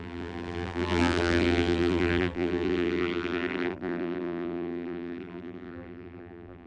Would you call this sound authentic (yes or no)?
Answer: no